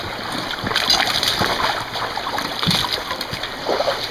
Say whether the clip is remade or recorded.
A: recorded